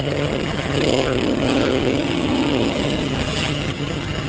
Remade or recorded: remade